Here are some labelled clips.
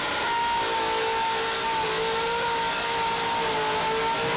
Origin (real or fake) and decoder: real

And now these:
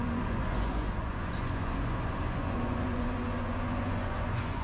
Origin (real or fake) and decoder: fake, vocoder, Vocos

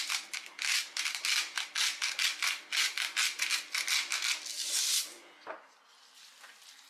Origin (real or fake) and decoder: real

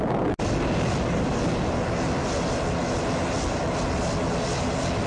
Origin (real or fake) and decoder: real